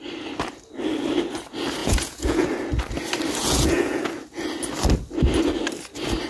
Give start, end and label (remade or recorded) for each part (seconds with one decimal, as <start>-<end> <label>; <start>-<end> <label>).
0.0-1.8 recorded; 1.8-2.5 remade; 2.5-3.4 recorded; 3.4-4.1 remade; 4.1-6.3 recorded